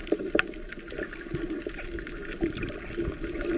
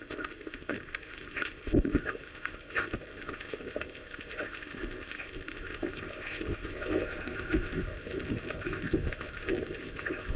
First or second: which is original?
first